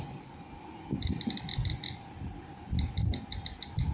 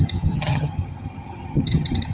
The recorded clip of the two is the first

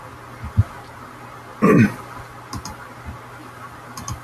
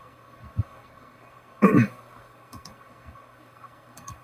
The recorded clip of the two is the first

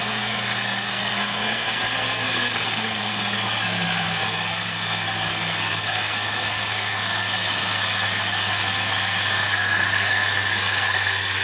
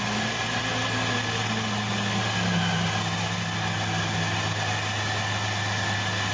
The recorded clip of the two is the second